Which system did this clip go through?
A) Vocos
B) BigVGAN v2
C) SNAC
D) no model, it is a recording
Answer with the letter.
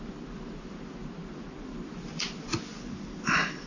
D